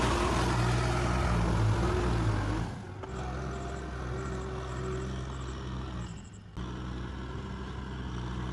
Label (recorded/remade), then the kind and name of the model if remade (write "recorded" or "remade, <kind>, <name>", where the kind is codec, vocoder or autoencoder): recorded